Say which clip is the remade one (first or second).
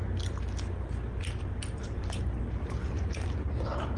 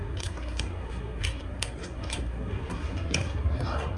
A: second